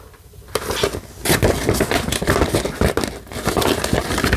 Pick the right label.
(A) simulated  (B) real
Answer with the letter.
B